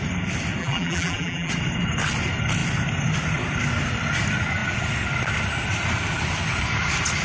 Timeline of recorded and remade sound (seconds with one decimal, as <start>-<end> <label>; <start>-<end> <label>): 0.0-0.6 recorded; 0.6-1.5 remade; 1.5-7.2 recorded